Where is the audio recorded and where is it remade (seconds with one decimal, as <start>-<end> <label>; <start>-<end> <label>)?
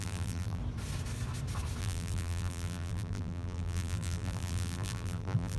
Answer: 0.0-0.6 remade; 0.6-1.8 recorded; 1.8-5.6 remade